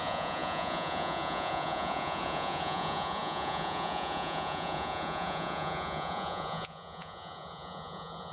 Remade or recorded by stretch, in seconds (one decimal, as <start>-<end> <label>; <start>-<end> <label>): 0.0-8.3 remade